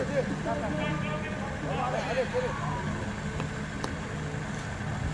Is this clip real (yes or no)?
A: yes